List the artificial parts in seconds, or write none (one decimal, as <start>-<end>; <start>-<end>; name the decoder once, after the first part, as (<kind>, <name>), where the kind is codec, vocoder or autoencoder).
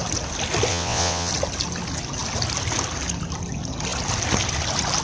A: 0.7-1.3 (vocoder, WaveNeXt)